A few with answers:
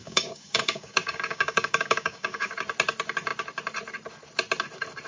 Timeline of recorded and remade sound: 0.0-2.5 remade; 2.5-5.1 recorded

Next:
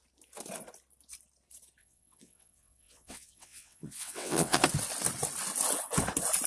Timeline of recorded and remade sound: 0.0-1.8 recorded; 1.8-4.6 remade; 4.6-6.5 recorded